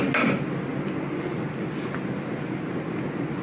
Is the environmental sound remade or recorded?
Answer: recorded